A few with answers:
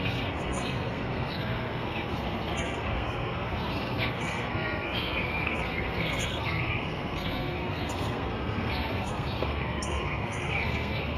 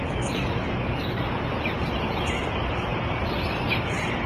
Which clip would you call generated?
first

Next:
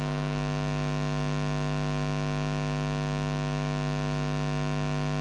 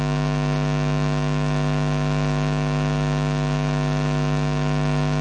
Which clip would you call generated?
second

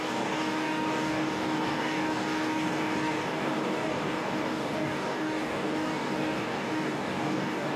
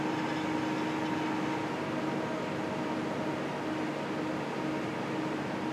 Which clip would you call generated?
first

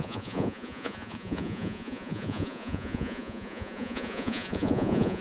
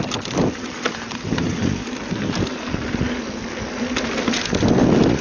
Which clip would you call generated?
first